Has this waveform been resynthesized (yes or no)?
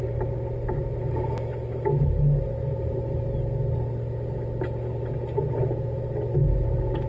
no